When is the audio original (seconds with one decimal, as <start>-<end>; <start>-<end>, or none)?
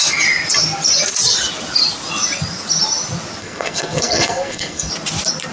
0.0-3.4; 4.9-5.5